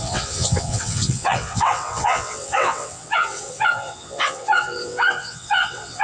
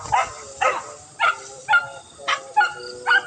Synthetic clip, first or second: first